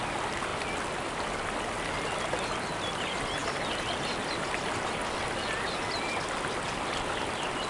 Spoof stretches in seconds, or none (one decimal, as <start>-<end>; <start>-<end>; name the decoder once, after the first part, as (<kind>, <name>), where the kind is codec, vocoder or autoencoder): none